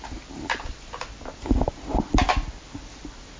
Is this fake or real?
real